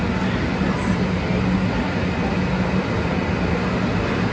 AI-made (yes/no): no